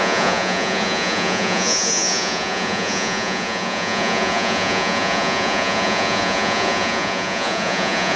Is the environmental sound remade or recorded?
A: remade